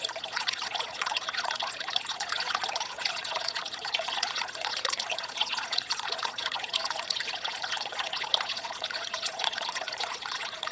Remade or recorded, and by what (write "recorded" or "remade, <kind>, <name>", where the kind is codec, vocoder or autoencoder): remade, vocoder, Vocos